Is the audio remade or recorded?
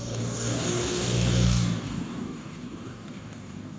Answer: remade